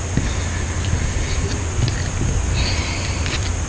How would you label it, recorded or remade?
recorded